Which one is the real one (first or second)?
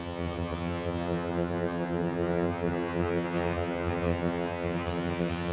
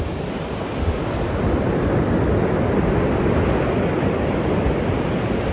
second